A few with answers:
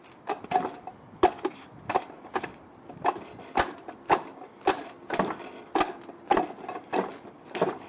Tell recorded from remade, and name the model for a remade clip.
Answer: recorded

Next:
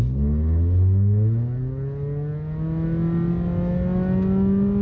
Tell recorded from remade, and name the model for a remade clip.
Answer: recorded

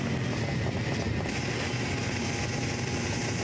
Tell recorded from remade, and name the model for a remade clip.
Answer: recorded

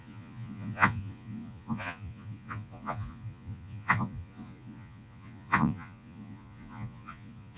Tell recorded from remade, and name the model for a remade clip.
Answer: remade, vocoder, Vocos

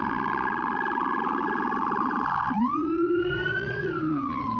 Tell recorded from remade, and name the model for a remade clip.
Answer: remade, vocoder, Vocos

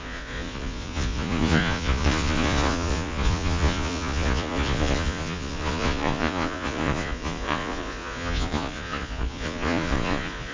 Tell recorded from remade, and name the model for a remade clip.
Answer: remade, vocoder, Vocos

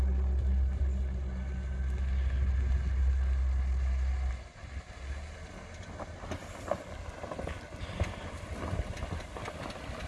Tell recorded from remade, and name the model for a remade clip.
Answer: recorded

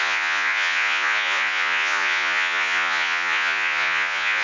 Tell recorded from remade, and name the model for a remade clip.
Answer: remade, vocoder, Vocos